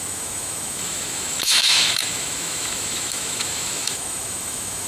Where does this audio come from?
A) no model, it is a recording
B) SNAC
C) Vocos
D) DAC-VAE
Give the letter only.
D